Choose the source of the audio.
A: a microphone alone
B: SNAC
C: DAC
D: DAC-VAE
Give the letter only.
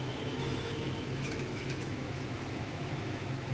D